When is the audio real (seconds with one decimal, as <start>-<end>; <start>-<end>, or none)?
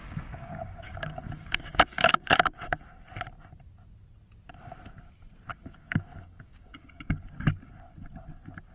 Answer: 2.8-5.5; 7.2-8.7